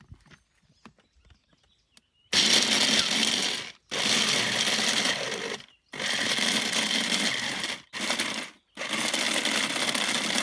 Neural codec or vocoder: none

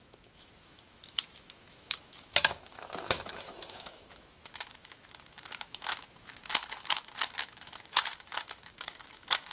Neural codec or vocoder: autoencoder, DAC-VAE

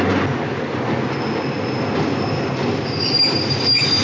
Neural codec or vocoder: none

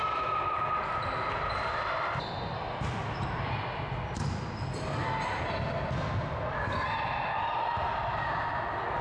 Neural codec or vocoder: none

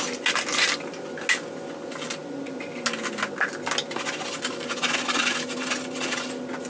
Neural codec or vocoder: none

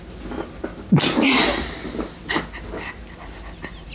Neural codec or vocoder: none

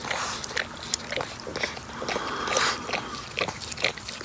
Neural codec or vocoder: none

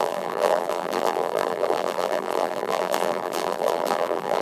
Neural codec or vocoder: vocoder, BigVGAN v2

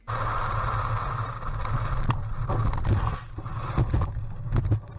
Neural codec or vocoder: none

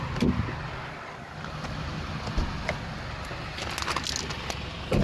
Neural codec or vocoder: none